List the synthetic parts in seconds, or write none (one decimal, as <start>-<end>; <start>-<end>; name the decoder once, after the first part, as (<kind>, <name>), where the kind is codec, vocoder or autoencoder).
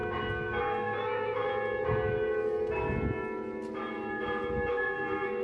0.6-1.5 (codec, SNAC); 4.7-5.4